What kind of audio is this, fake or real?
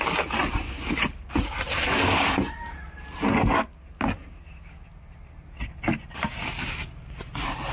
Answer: real